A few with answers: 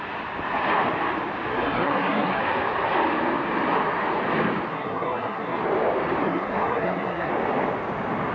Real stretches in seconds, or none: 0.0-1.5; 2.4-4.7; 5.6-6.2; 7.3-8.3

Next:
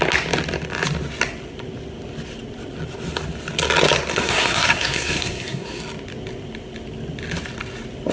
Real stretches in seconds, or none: 0.0-4.1; 5.8-8.1

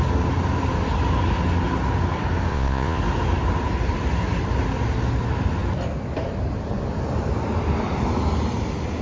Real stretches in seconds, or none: 0.0-2.5; 3.0-9.0

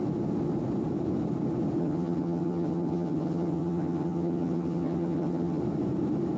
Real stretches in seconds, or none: 0.0-1.8; 5.6-6.4